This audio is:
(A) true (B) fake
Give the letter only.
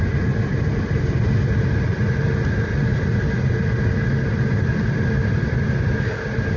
A